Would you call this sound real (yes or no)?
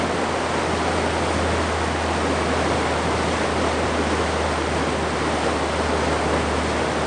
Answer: yes